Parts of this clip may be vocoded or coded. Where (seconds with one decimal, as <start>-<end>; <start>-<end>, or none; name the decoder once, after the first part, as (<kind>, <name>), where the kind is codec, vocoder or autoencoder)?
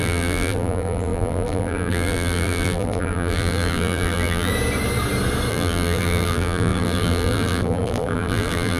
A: 0.0-4.5 (vocoder, BigVGAN v2); 5.5-8.8